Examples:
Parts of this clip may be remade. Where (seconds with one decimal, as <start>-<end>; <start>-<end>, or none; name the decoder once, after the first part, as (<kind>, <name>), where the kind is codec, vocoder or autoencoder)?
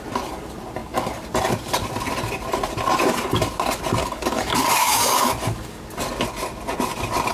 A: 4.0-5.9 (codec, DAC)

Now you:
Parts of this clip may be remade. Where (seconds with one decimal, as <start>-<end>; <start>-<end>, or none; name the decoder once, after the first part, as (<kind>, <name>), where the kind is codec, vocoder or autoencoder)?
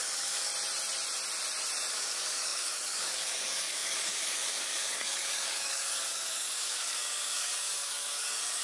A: 0.0-0.5 (codec, DAC); 1.9-8.6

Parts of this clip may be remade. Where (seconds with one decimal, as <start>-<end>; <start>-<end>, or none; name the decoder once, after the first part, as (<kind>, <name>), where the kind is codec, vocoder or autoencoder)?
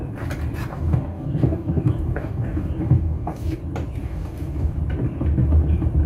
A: 0.7-3.6 (codec, DAC); 4.0-4.8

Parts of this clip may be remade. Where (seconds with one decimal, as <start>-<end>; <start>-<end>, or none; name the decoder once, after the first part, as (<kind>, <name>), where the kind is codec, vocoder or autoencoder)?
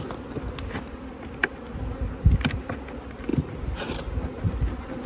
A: none